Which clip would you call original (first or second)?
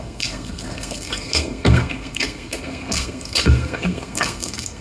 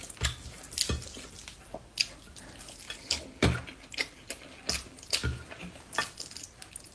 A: second